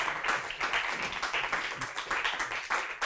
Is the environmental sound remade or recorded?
recorded